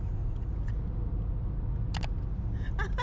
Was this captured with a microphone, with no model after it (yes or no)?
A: yes